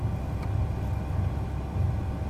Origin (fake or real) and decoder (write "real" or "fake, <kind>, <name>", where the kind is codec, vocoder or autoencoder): real